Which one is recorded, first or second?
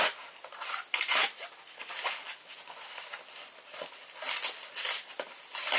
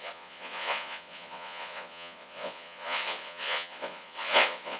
first